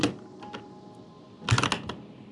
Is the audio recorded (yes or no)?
yes